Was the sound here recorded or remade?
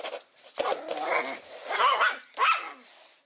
recorded